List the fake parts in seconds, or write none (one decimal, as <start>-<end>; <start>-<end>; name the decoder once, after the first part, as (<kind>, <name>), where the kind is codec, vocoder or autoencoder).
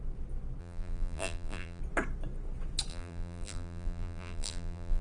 0.6-1.8 (vocoder, BigVGAN v2); 2.9-5.0